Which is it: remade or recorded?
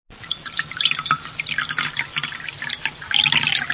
recorded